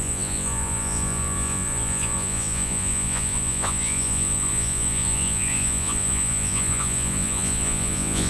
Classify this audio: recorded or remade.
remade